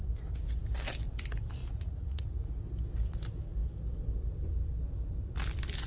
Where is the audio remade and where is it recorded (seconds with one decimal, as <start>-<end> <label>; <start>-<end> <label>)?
0.0-1.6 recorded; 1.6-2.5 remade; 2.5-5.9 recorded